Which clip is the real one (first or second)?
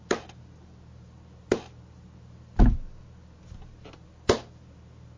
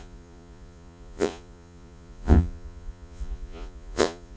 first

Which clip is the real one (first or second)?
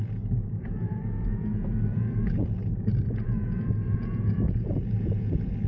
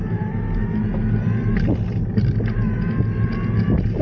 second